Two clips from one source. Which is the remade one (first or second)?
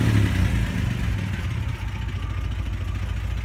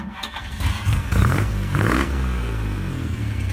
second